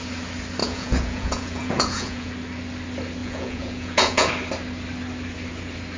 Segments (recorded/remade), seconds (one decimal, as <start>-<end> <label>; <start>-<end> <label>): 0.0-0.6 recorded; 0.6-2.3 remade; 2.3-3.2 recorded; 3.2-4.3 remade; 4.3-6.0 recorded